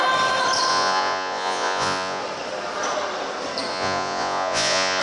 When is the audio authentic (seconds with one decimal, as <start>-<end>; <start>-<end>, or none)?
0.0-0.7; 2.2-3.7